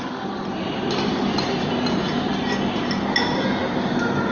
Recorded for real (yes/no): yes